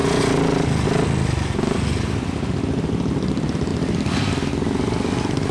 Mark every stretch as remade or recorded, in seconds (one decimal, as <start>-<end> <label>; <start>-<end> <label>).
0.0-5.5 recorded